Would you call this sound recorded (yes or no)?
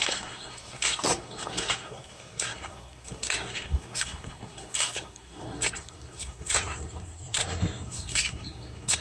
no